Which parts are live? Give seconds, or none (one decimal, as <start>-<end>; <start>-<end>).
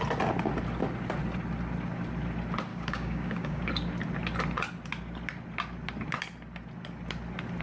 0.0-2.7; 3.7-7.6